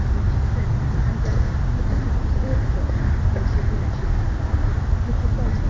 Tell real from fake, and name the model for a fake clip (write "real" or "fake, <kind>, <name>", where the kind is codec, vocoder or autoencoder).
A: real